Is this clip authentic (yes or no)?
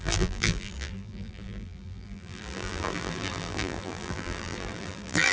no